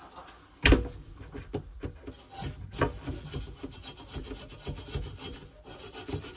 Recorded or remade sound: recorded